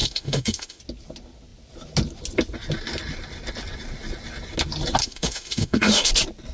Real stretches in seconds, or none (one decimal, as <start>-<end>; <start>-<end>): 0.8-5.0; 6.1-6.5